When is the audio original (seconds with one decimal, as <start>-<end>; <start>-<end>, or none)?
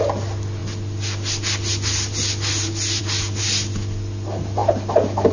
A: 0.0-5.3